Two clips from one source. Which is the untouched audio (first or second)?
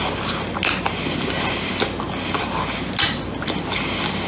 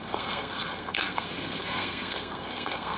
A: first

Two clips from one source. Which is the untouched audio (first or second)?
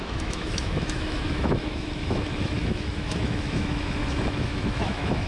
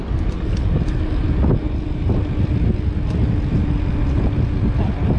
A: second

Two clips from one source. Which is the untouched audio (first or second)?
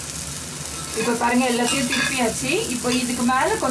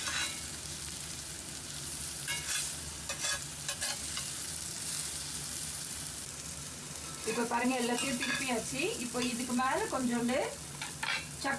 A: first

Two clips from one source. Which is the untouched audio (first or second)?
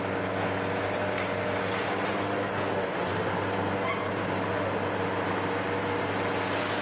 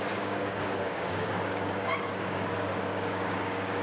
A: first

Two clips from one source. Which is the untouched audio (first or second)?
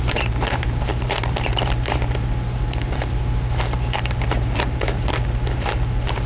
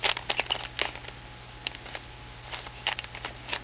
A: second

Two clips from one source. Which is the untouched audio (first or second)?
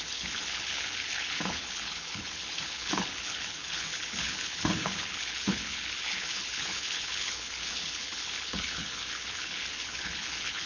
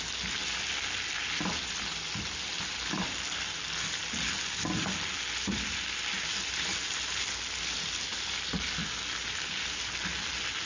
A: second